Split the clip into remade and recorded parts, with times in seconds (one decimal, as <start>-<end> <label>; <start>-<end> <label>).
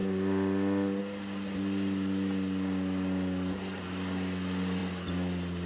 0.0-5.7 recorded